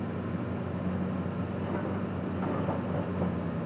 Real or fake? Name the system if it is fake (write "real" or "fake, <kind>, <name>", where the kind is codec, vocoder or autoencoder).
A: real